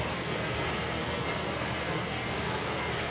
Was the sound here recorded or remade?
remade